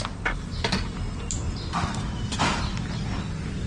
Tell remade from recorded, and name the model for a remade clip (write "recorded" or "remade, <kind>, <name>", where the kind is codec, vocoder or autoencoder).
recorded